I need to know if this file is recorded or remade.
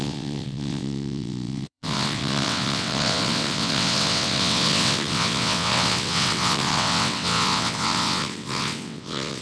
remade